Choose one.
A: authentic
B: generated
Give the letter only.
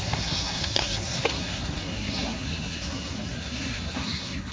B